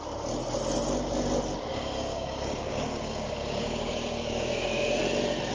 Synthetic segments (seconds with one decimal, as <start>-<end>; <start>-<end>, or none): 1.7-5.0